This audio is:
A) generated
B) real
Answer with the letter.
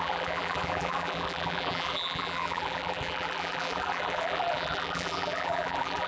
A